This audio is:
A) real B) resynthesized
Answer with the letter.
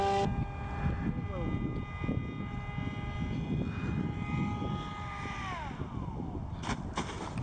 A